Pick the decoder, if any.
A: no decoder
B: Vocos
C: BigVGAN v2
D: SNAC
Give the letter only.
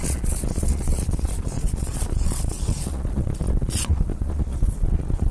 B